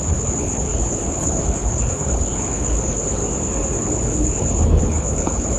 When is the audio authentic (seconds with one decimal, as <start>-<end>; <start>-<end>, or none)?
3.2-3.8